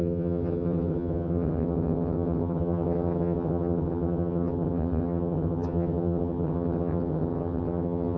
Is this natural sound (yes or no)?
no